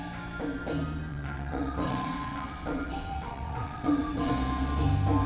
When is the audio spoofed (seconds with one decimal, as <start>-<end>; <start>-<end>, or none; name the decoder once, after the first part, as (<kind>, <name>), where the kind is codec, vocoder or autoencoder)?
1.1-4.3 (vocoder, WaveNeXt)